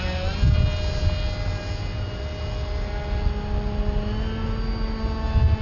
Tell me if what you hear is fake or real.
real